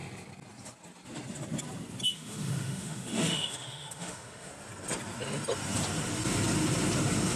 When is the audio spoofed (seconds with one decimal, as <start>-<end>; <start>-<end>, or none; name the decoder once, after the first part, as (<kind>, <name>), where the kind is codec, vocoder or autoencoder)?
2.1-4.5 (autoencoder, DAC-VAE)